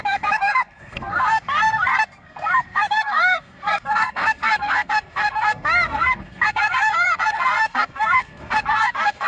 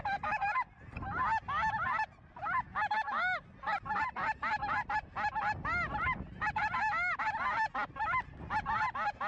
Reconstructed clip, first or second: first